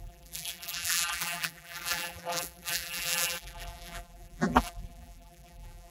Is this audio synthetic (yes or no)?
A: yes